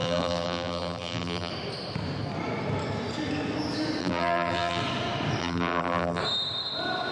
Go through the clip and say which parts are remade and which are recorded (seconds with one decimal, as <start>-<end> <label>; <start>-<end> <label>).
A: 0.0-1.5 remade; 1.5-4.0 recorded; 4.0-4.8 remade; 4.8-5.4 recorded; 5.4-6.2 remade; 6.2-7.1 recorded

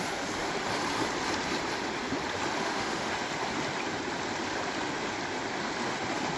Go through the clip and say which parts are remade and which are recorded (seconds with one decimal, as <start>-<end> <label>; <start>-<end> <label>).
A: 0.0-2.6 recorded; 2.6-3.1 remade; 3.1-6.4 recorded

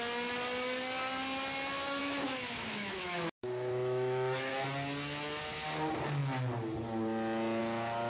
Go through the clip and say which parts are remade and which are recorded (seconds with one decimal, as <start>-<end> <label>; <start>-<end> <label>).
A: 0.0-2.0 recorded; 2.0-4.5 remade; 4.5-8.1 recorded

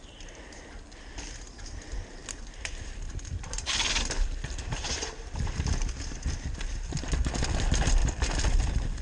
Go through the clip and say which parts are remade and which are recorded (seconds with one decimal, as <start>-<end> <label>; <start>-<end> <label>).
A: 0.0-2.2 recorded; 2.2-5.7 remade; 5.7-8.0 recorded; 8.0-8.6 remade; 8.6-9.0 recorded

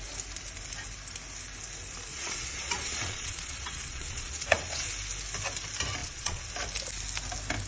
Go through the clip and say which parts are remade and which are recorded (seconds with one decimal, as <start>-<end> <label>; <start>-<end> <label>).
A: 0.0-2.1 recorded; 2.1-4.9 remade; 4.9-6.0 recorded; 6.0-6.5 remade; 6.5-7.7 recorded

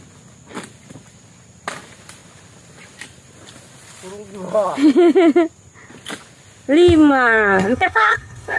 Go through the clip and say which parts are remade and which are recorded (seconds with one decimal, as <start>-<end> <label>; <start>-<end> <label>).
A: 0.0-7.1 recorded; 7.1-8.6 remade

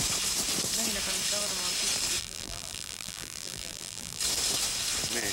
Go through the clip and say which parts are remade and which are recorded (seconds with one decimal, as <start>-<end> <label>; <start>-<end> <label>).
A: 0.0-2.2 recorded; 2.2-4.2 remade; 4.2-5.3 recorded